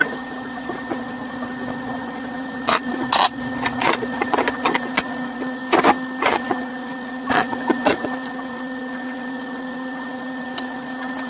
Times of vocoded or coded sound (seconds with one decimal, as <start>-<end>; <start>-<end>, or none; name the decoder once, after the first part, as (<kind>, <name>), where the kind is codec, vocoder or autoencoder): 0.0-5.6 (vocoder, Vocos); 6.2-11.3